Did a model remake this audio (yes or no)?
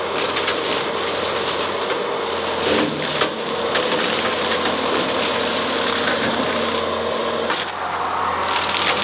no